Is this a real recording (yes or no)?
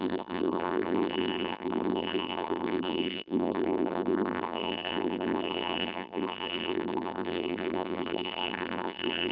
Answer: no